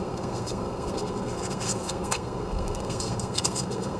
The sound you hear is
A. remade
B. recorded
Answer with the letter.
A